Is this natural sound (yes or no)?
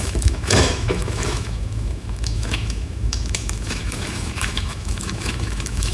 no